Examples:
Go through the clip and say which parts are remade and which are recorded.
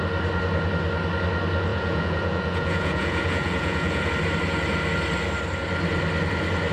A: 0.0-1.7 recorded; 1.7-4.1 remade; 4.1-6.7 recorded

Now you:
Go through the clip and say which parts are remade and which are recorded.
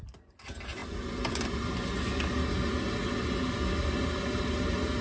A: 0.0-5.0 recorded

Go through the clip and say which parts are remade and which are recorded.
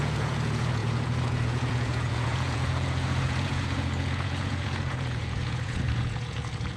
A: 0.0-6.8 remade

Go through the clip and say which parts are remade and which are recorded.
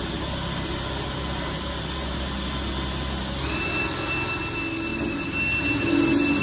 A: 0.0-6.4 recorded